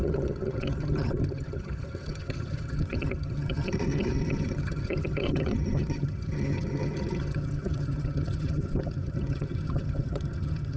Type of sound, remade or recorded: remade